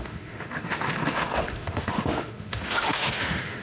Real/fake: fake